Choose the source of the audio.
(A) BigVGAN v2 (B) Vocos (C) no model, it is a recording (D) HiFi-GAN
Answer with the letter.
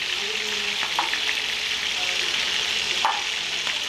C